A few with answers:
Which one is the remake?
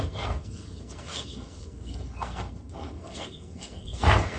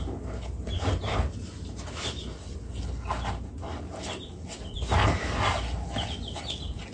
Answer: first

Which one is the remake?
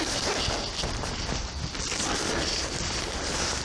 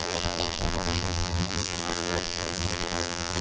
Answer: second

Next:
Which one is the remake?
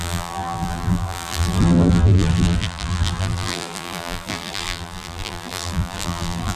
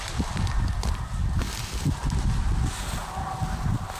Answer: first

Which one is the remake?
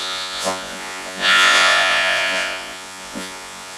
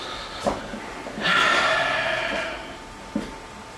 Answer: first